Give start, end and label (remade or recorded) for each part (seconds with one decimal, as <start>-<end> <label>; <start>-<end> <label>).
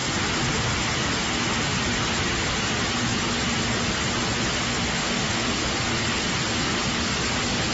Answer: 0.0-4.9 recorded; 4.9-5.4 remade; 5.4-7.7 recorded